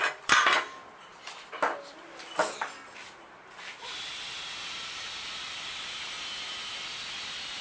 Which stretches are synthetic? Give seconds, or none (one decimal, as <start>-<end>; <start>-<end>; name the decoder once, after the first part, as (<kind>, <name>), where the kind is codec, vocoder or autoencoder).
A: none